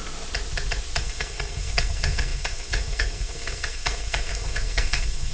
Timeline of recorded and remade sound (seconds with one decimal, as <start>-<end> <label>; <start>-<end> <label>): 0.0-1.0 recorded; 1.0-5.3 remade